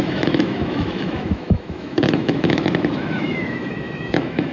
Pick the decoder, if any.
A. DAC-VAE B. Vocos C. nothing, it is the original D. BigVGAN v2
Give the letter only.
A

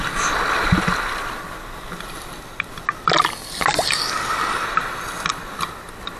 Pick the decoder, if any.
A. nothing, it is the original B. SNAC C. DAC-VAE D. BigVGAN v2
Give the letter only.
A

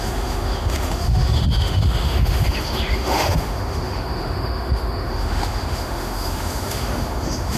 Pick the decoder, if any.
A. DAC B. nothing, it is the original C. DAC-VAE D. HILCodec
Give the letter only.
C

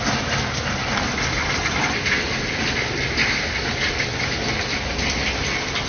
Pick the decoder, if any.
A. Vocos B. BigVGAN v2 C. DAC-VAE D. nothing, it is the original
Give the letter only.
D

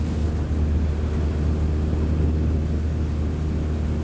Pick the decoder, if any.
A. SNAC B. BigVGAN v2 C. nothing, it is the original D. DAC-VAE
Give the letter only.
C